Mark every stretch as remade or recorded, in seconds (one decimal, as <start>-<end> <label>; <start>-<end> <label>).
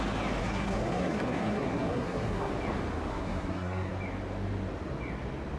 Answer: 0.0-0.4 recorded; 0.4-2.5 remade; 2.5-3.1 recorded; 3.1-3.9 remade; 3.9-5.6 recorded